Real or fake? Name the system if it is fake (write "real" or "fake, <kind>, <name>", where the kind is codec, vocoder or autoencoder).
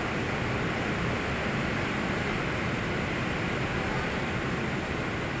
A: real